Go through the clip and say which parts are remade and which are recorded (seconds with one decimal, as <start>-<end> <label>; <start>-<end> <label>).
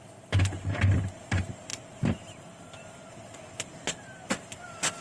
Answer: 0.0-5.0 recorded